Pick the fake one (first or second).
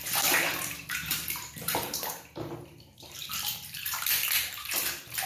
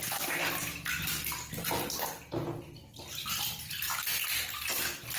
first